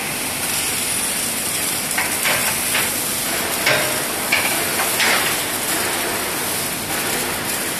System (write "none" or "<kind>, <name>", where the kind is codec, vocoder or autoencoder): none